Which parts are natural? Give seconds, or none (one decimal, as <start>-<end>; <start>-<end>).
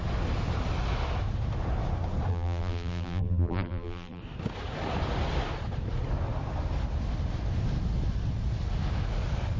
0.0-2.3; 4.2-9.6